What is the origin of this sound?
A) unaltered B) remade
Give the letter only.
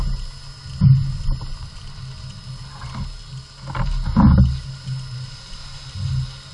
A